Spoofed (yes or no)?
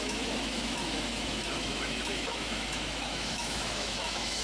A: yes